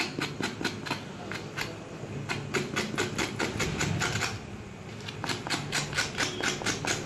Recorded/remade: recorded